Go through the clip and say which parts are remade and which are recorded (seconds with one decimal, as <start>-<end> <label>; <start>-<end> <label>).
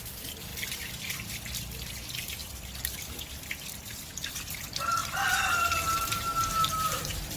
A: 0.0-7.4 remade